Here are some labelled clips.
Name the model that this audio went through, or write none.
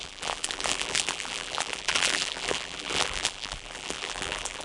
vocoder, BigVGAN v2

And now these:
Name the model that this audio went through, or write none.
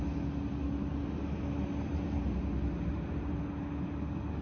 none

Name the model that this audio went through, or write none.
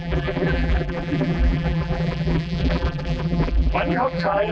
vocoder, BigVGAN v2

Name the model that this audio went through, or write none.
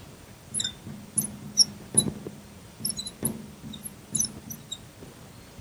vocoder, BigVGAN v2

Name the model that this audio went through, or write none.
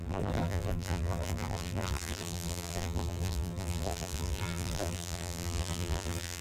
vocoder, BigVGAN v2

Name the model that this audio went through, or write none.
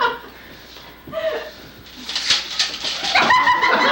none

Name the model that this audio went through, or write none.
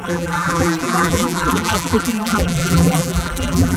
vocoder, BigVGAN v2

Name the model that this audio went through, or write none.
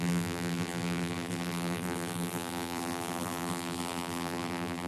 vocoder, BigVGAN v2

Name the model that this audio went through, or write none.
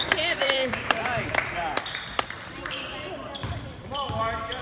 vocoder, BigVGAN v2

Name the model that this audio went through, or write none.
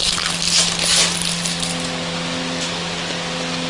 vocoder, BigVGAN v2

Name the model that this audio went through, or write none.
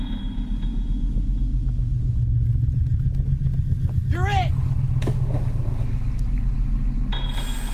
none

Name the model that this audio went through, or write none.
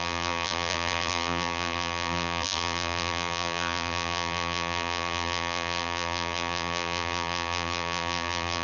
vocoder, BigVGAN v2